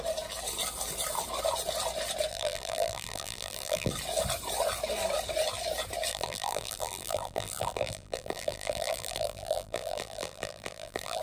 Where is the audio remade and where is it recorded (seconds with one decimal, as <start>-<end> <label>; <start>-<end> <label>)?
0.0-2.3 recorded; 2.3-3.9 remade; 3.9-6.1 recorded; 6.1-11.2 remade